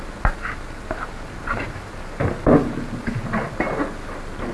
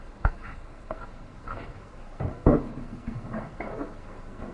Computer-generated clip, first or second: second